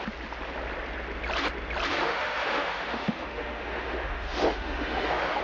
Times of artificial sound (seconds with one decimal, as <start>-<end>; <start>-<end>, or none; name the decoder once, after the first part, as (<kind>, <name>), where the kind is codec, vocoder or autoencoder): 1.9-5.4 (autoencoder, DAC-VAE)